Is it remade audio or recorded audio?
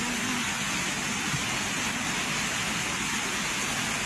recorded